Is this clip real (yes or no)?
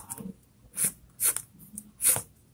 yes